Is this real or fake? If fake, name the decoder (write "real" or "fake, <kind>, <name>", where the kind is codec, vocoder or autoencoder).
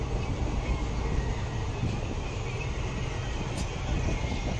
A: real